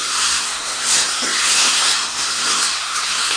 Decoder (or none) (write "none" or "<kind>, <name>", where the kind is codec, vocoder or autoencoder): codec, SNAC